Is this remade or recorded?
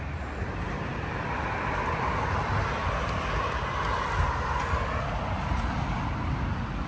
recorded